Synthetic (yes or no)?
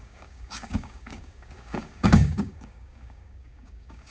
yes